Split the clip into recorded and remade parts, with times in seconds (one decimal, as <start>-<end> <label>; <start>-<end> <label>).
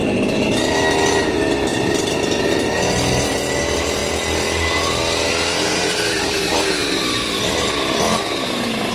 0.0-0.6 remade; 0.6-1.7 recorded; 1.7-3.4 remade; 3.4-8.9 recorded